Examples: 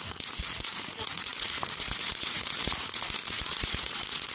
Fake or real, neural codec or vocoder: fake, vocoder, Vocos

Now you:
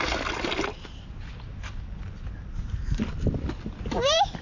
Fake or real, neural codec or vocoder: real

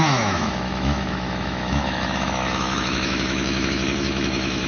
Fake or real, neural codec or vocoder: fake, autoencoder, DAC-VAE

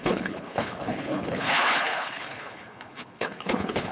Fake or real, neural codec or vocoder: fake, codec, HILCodec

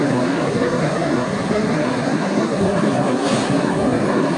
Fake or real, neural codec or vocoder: fake, codec, SNAC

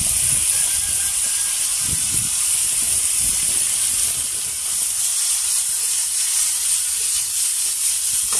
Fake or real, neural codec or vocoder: real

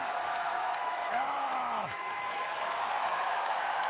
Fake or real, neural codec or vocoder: fake, autoencoder, DAC-VAE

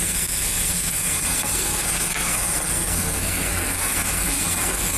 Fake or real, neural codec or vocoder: fake, codec, SNAC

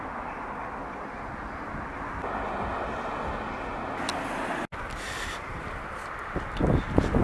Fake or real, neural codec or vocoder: real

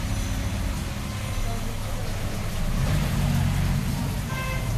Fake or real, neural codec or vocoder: real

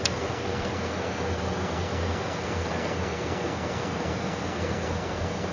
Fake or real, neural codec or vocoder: fake, codec, SNAC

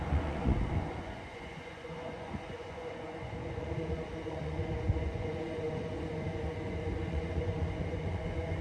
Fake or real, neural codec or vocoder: fake, vocoder, Vocos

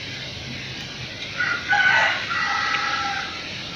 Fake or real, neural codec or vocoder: real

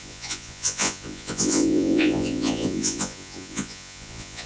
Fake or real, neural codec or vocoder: fake, vocoder, Vocos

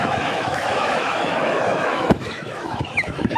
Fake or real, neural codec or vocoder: fake, autoencoder, DAC-VAE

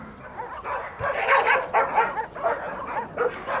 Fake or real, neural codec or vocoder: real